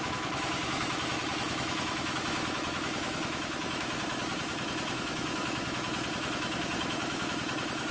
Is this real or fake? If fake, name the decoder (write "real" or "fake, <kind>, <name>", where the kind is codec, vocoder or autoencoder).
fake, autoencoder, DAC-VAE